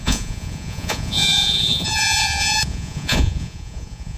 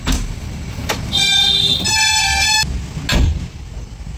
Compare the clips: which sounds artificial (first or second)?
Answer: first